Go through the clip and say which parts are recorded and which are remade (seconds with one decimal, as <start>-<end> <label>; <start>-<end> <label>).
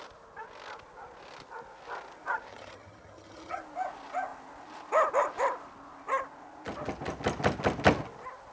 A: 0.0-2.5 recorded; 2.5-3.6 remade; 3.6-8.5 recorded